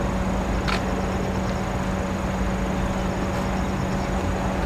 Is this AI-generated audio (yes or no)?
no